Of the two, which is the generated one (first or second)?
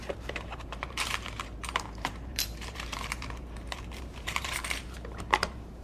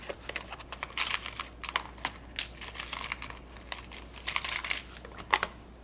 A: first